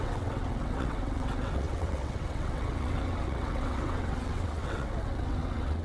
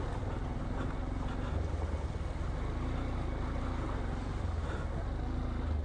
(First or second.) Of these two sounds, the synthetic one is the first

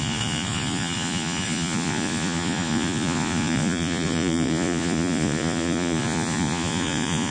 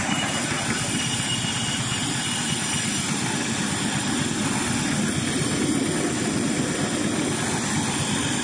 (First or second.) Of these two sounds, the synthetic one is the first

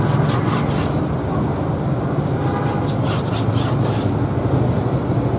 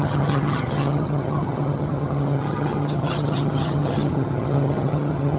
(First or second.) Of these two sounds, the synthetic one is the second